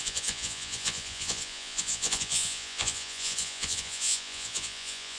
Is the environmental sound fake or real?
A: fake